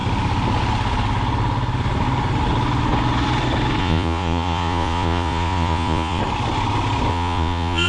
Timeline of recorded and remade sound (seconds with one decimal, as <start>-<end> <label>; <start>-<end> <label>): 0.0-3.8 recorded; 3.8-6.2 remade; 6.2-7.1 recorded; 7.1-7.9 remade